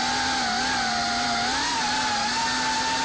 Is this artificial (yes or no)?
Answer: no